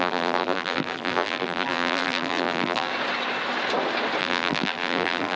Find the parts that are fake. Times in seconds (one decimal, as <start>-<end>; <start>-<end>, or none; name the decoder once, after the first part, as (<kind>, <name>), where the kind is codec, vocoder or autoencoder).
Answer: 0.0-2.9 (vocoder, BigVGAN v2); 4.2-5.4